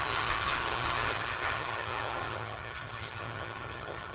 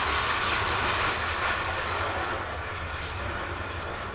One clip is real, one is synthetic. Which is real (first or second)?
second